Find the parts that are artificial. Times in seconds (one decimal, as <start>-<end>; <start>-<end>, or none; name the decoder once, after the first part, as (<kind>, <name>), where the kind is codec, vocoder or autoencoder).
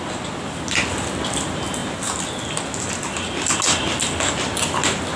none